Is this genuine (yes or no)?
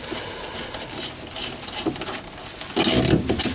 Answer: yes